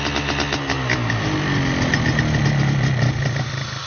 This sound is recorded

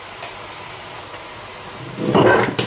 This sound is recorded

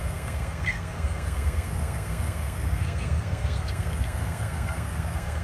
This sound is remade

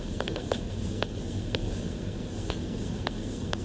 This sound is remade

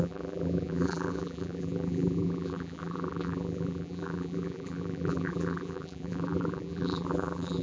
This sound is remade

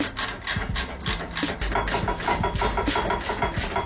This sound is recorded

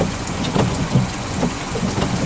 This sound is remade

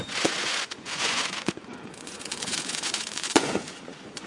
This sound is remade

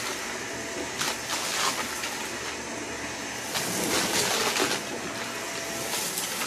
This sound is recorded